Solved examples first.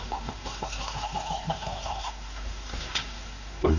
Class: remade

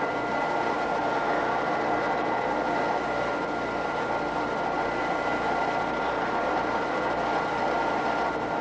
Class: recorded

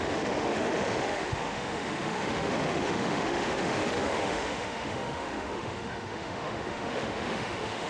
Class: remade